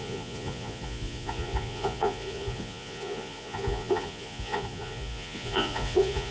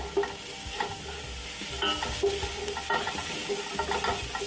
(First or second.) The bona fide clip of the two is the second